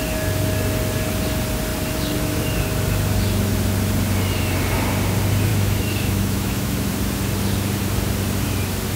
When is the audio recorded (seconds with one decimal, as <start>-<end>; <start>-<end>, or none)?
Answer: 0.0-5.5; 6.9-9.0